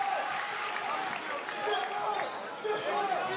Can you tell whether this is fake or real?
real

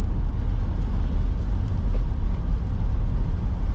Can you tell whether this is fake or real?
real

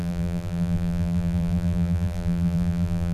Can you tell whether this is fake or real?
fake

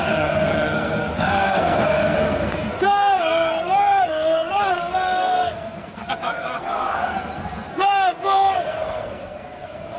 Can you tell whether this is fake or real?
fake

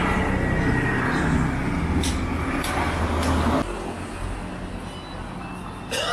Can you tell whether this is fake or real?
real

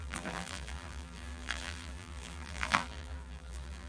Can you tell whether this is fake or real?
fake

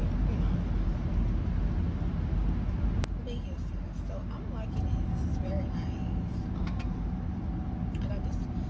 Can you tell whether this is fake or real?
real